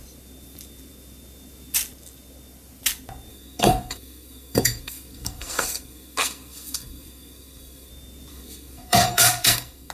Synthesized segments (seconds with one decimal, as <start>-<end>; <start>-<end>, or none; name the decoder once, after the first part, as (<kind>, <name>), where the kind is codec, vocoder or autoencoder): 3.3-7.9 (codec, SNAC); 8.3-9.9